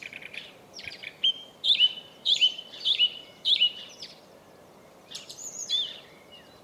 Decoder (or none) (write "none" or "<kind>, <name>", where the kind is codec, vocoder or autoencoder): vocoder, BigVGAN v2